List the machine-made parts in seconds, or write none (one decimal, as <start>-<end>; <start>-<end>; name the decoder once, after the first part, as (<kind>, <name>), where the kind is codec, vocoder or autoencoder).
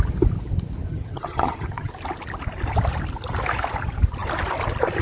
0.9-1.9 (vocoder, HiFi-GAN)